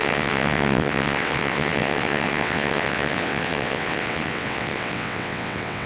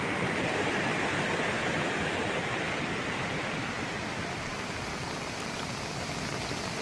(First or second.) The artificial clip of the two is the first